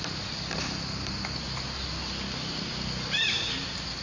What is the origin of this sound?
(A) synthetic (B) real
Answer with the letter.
B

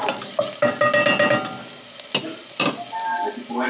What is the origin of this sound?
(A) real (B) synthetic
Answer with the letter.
A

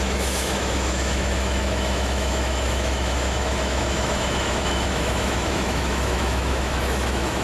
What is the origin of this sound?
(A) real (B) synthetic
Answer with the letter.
B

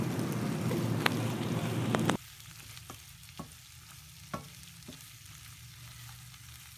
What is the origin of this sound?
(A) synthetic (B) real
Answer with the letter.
B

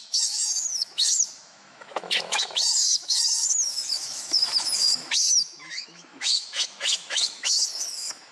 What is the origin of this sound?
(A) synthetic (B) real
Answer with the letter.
A